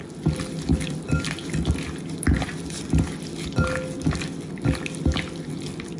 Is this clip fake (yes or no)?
no